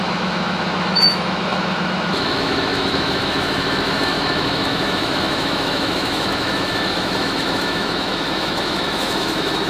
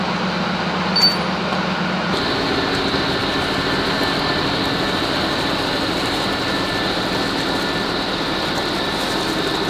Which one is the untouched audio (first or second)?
second